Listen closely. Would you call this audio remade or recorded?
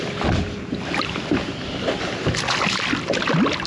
recorded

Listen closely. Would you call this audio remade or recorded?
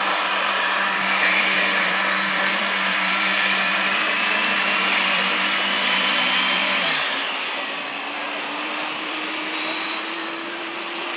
remade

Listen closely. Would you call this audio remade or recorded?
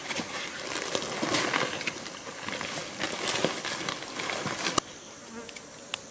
recorded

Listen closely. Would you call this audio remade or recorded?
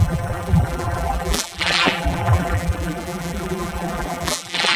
remade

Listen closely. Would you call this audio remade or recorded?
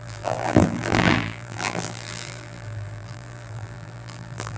remade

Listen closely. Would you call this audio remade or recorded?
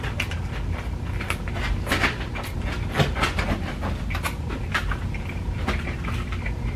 recorded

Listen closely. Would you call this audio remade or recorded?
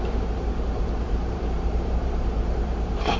remade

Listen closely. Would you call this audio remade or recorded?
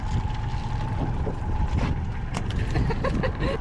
recorded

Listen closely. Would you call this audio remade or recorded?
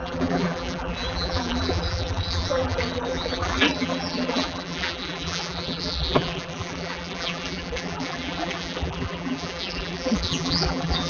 remade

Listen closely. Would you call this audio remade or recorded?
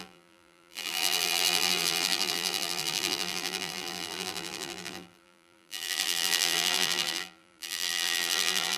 remade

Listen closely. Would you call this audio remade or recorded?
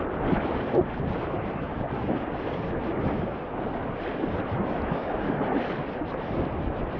recorded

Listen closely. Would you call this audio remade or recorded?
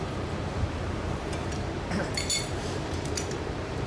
remade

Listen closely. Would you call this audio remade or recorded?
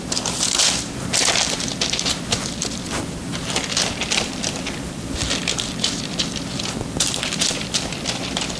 remade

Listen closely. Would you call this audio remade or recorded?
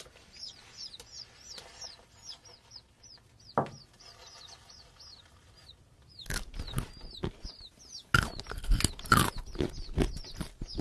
recorded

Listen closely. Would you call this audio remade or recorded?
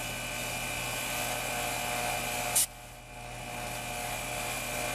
recorded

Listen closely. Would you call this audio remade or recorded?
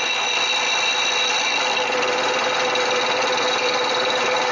recorded